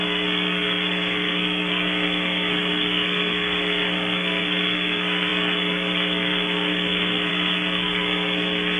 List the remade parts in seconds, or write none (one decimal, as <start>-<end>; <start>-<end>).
0.0-8.8